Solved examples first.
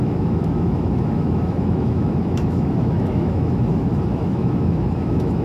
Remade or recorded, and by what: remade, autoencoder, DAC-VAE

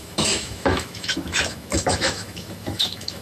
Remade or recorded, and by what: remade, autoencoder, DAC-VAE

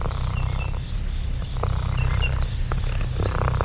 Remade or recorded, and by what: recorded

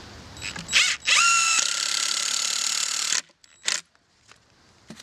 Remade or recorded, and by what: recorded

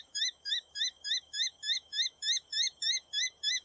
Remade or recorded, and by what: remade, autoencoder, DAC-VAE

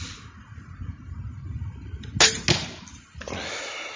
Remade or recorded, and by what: recorded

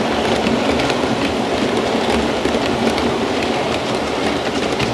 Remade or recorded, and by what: recorded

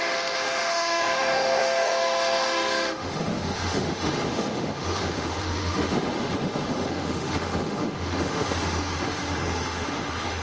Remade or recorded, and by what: remade, autoencoder, DAC-VAE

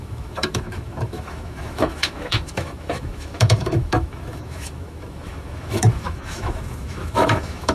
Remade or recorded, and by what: remade, autoencoder, DAC-VAE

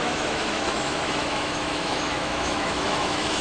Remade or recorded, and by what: remade, autoencoder, DAC-VAE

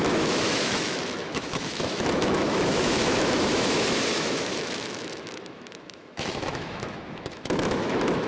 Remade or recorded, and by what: remade, autoencoder, DAC-VAE